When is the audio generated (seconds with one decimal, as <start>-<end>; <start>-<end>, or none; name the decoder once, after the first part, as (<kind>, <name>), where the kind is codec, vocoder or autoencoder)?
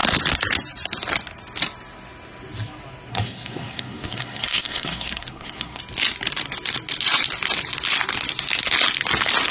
3.1-5.8 (codec, SNAC)